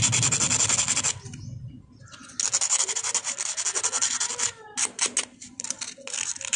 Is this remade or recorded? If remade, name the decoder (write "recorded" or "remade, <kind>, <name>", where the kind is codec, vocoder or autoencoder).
recorded